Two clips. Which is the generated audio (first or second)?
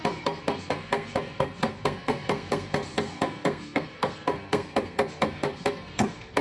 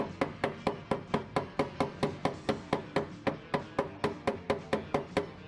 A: first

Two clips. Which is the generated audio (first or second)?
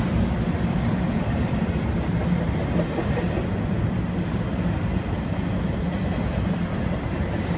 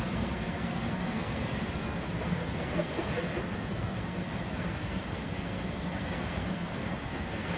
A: second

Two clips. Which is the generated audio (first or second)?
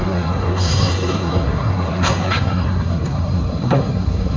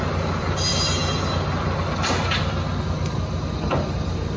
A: first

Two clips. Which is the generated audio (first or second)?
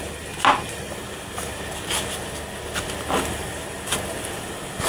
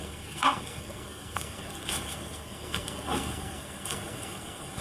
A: second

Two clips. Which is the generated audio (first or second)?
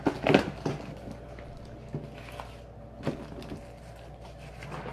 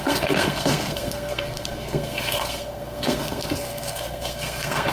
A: second